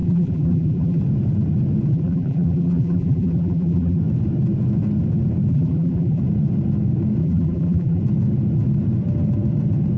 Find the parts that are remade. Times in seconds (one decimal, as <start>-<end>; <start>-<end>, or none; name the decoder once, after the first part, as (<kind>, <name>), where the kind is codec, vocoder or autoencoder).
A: 0.0-1.0 (vocoder, BigVGAN v2); 1.9-4.0; 5.5-6.2; 7.2-8.0